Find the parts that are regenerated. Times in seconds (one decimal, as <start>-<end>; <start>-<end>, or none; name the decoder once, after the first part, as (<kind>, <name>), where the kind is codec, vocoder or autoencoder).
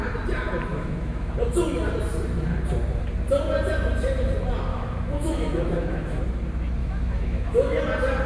0.7-1.3 (autoencoder, DAC-VAE); 4.7-6.2; 6.8-7.8